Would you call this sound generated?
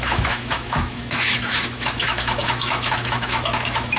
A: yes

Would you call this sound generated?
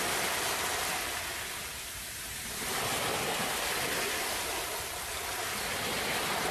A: no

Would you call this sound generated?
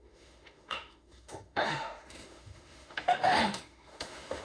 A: yes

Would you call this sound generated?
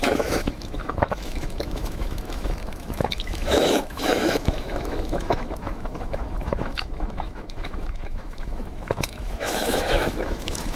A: yes